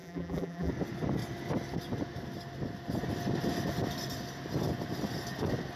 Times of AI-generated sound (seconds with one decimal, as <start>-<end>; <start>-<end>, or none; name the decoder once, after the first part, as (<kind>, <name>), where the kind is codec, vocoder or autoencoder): 0.0-0.7 (vocoder, BigVGAN v2)

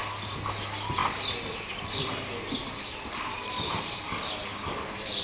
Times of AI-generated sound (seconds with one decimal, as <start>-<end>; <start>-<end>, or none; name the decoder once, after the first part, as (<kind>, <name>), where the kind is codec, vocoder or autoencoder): 1.0-3.1 (vocoder, BigVGAN v2)

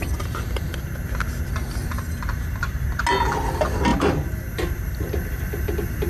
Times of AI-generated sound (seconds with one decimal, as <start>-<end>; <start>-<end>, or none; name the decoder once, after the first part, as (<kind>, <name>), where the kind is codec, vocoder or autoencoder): 1.8-3.0 (vocoder, BigVGAN v2); 3.9-4.8

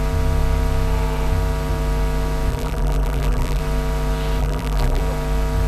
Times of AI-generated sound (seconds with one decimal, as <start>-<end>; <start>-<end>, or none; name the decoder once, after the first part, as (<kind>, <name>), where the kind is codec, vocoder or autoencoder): 2.5-3.6 (vocoder, BigVGAN v2); 4.4-5.0

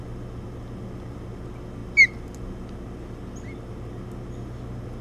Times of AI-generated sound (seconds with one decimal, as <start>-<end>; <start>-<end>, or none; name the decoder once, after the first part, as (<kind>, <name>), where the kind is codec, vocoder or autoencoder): none